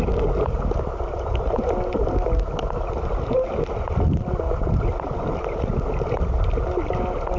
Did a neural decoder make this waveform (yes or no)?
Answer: no